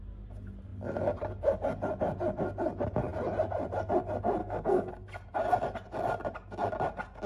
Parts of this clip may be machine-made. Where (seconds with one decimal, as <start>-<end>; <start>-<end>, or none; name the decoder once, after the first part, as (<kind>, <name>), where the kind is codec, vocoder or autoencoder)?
4.4-4.9 (codec, SNAC)